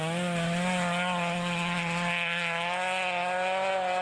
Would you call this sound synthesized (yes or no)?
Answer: no